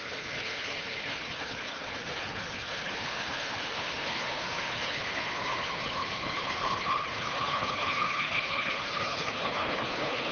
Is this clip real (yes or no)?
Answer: no